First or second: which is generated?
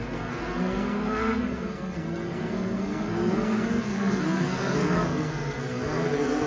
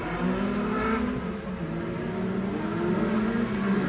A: first